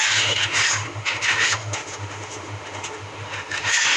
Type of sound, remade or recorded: remade